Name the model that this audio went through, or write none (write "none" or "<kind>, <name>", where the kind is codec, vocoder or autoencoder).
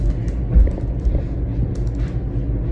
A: none